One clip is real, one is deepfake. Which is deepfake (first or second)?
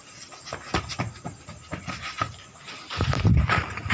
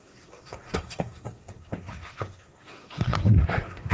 second